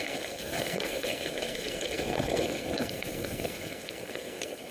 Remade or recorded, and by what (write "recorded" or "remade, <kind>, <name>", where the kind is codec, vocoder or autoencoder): remade, codec, SNAC